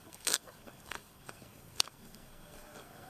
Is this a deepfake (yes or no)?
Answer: yes